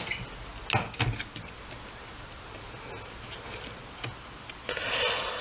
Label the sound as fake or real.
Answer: real